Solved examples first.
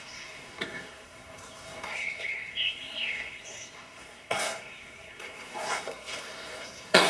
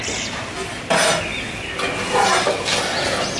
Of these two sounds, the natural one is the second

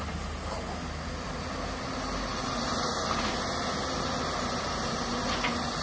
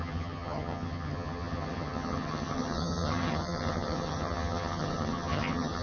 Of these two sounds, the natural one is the first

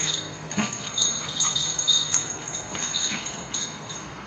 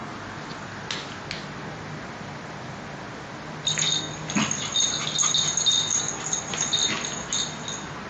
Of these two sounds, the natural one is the second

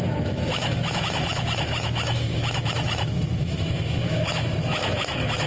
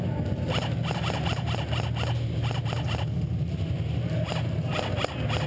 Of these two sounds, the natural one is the second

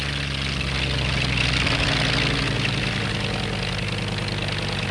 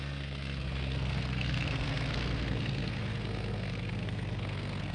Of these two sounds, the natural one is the first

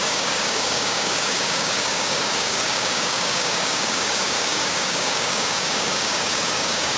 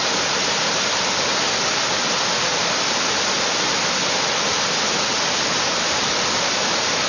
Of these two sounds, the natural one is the second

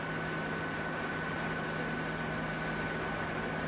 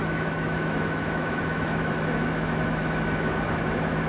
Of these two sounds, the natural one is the first